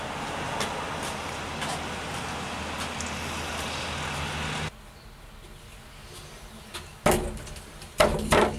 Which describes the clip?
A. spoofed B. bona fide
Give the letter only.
B